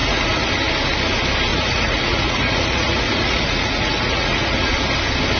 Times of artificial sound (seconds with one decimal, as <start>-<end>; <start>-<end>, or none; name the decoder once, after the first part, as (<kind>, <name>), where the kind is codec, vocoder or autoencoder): 0.0-0.5 (vocoder, Vocos); 1.5-4.7